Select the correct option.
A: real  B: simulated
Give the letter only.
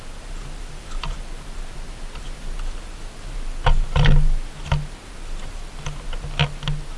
A